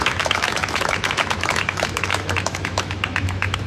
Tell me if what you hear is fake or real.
fake